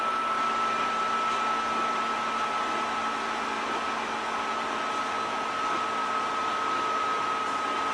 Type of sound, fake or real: real